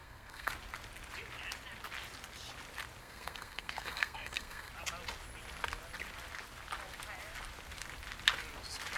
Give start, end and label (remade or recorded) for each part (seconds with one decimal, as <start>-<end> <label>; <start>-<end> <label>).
0.0-0.5 remade; 0.5-3.0 recorded; 3.0-4.7 remade; 4.7-9.0 recorded